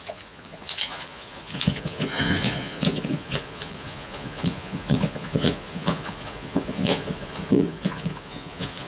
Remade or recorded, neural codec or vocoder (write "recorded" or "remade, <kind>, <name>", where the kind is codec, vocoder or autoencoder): remade, vocoder, Vocos